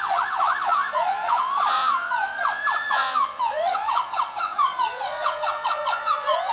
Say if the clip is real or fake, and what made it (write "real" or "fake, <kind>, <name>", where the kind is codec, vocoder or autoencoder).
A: fake, vocoder, Vocos